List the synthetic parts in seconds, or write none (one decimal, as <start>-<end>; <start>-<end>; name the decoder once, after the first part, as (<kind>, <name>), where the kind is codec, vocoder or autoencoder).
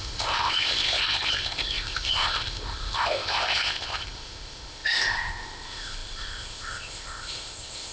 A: 0.0-7.9 (codec, ZipCodec)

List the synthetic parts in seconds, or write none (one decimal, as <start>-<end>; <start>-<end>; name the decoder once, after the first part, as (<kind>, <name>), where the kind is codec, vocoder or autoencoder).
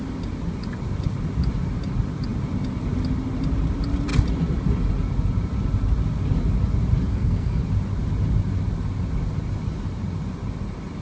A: 7.1-7.6 (codec, SNAC)